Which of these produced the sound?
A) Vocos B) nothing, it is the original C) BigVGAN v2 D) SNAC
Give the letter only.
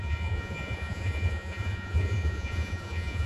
A